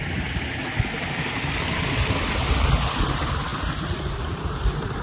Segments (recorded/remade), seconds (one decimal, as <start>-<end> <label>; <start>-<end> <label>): 0.0-5.0 recorded